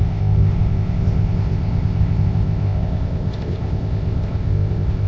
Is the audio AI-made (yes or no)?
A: yes